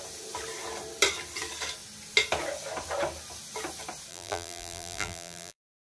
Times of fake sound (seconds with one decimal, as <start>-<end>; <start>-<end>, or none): 4.1-5.8